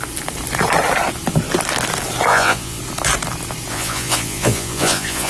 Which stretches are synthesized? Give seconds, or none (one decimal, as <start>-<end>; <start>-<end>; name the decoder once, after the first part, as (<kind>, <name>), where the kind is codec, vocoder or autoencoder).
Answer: 2.3-2.8 (vocoder, Vocos); 3.7-5.3